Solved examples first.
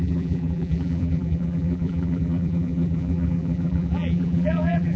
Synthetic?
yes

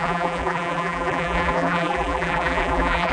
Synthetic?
yes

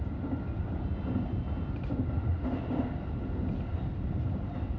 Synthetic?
no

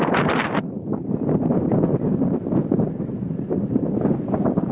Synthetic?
yes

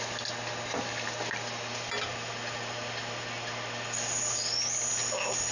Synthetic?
no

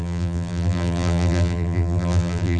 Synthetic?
yes